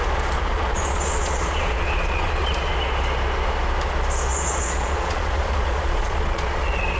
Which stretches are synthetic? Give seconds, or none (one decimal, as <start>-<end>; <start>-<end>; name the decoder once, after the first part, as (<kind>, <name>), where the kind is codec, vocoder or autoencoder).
0.4-2.7 (vocoder, Vocos); 4.3-7.0